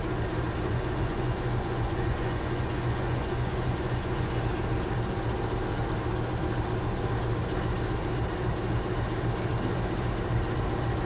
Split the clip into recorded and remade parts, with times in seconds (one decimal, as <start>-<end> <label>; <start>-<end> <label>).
0.0-0.7 recorded; 0.7-4.4 remade; 4.4-11.1 recorded